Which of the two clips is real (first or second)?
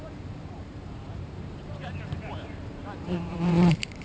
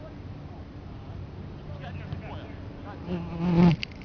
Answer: second